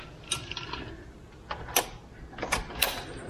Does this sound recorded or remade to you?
recorded